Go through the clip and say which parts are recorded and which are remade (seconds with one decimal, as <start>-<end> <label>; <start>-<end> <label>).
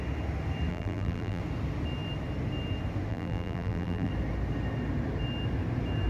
0.0-0.7 recorded; 0.7-1.4 remade; 1.4-3.1 recorded; 3.1-4.1 remade; 4.1-6.1 recorded